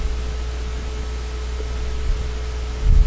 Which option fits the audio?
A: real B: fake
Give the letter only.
A